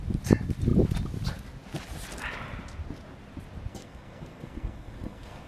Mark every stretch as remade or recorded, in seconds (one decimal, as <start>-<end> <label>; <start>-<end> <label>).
0.0-3.7 recorded; 3.7-5.5 remade